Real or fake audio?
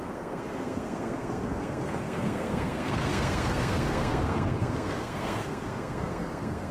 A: fake